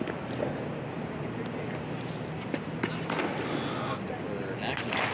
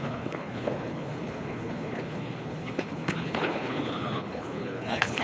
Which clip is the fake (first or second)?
second